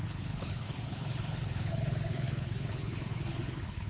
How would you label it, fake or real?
fake